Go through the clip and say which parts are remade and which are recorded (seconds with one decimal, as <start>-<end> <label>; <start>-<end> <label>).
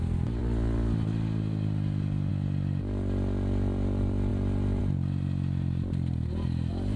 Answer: 0.0-7.0 recorded